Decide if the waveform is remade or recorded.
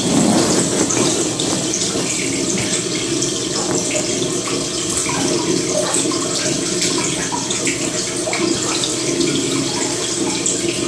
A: recorded